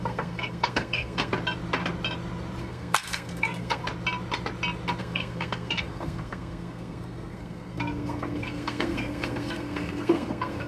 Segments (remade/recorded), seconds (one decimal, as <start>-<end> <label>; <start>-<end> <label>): 0.0-1.3 remade; 1.3-2.6 recorded; 2.6-3.8 remade; 3.8-5.0 recorded; 5.0-10.7 remade